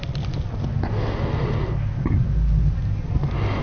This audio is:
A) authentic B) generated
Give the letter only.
A